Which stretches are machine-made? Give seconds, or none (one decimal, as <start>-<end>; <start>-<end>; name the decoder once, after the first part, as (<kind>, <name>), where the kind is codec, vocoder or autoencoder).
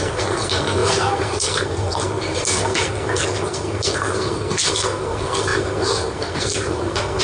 0.0-7.2 (codec, SNAC)